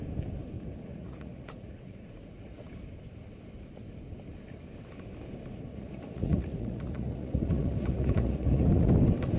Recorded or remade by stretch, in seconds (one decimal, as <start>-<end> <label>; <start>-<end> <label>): 0.0-0.9 recorded; 0.9-2.6 remade; 2.6-5.7 recorded; 5.7-8.9 remade; 8.9-9.4 recorded